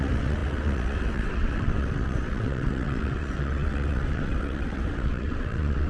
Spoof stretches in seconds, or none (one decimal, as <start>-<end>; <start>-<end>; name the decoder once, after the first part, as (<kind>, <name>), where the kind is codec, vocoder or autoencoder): 0.0-5.9 (vocoder, WaveNeXt)